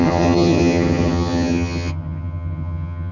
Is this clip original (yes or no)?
no